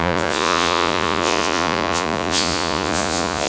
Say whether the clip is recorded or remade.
remade